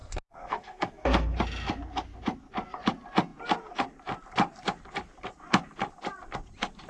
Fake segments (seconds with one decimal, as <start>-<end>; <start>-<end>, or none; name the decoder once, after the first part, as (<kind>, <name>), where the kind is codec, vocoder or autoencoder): 0.0-1.4 (codec, SNAC)